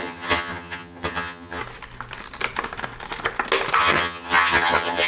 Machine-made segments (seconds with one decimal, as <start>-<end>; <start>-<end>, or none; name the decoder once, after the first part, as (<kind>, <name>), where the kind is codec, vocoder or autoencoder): 0.0-1.6 (vocoder, HiFi-GAN); 3.8-5.1